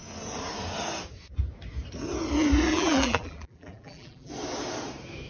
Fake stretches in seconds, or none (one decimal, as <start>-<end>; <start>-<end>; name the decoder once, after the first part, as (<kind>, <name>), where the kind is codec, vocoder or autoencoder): 2.7-4.3 (vocoder, BigVGAN v2)